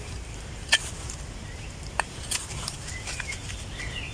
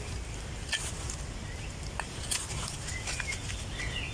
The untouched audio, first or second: second